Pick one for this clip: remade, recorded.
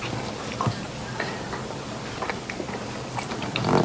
recorded